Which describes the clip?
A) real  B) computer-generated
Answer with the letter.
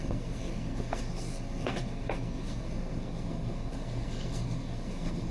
B